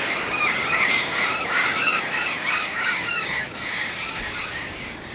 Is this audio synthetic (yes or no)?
yes